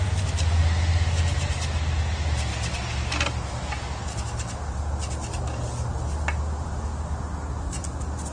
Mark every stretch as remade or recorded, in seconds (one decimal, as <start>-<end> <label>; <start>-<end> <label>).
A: 0.0-8.3 recorded